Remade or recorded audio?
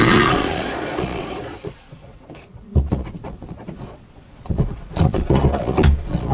remade